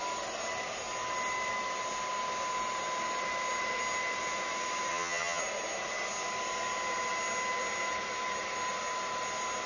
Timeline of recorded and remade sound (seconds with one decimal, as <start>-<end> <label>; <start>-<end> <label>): 0.0-4.9 recorded; 4.9-5.4 remade; 5.4-9.7 recorded